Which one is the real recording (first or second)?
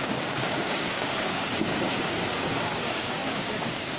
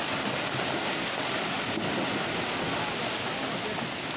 second